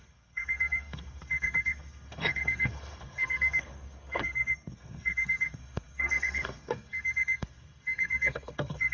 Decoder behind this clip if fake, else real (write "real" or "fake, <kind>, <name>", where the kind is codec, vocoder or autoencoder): fake, codec, SNAC